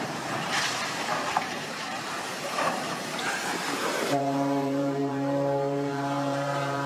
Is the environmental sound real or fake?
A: fake